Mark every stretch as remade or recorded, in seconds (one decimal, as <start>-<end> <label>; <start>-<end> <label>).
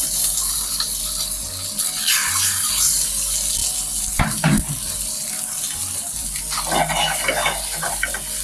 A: 0.0-8.4 recorded